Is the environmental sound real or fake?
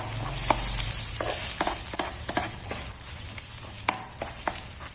real